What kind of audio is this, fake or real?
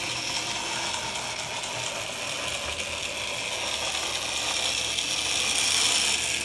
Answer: real